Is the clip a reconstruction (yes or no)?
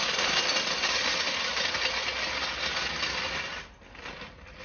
no